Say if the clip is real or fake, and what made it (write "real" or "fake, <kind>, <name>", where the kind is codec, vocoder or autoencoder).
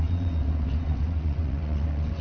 fake, vocoder, WaveNeXt